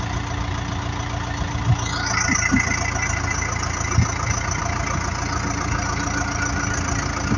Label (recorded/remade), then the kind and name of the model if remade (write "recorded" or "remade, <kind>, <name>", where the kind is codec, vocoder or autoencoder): recorded